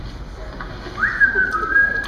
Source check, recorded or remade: recorded